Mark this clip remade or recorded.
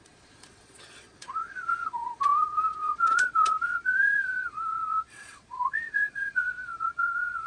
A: remade